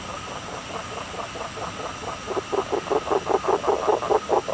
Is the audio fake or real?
real